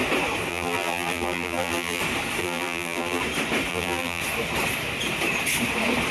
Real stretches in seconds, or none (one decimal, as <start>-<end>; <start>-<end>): 0.0-0.5; 2.0-2.4; 3.2-3.7; 4.2-6.1